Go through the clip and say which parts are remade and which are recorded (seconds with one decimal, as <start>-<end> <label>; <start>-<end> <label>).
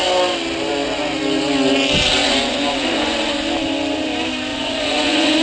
0.0-2.2 recorded; 2.2-3.3 remade; 3.3-4.5 recorded; 4.5-5.4 remade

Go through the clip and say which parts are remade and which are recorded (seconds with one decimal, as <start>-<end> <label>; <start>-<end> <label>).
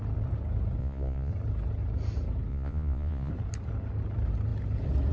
0.0-0.8 recorded; 0.8-1.3 remade; 1.3-2.5 recorded; 2.5-3.3 remade; 3.3-5.1 recorded